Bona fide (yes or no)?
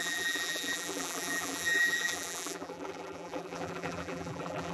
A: no